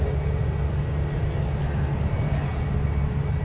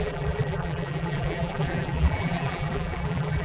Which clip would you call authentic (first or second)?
first